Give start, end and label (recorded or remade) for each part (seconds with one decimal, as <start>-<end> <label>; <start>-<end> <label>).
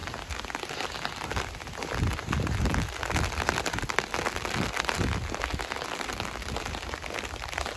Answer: 0.0-7.8 recorded